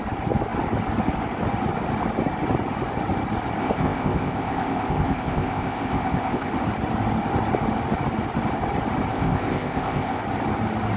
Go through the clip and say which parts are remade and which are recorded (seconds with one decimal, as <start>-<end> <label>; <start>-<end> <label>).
0.0-3.6 recorded; 3.6-6.5 remade; 6.5-9.1 recorded; 9.1-10.2 remade; 10.2-11.0 recorded